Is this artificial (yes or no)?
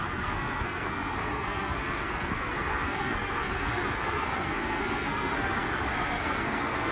yes